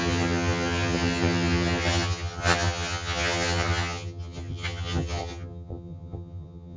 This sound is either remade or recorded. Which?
remade